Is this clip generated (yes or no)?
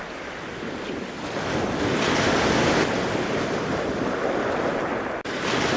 no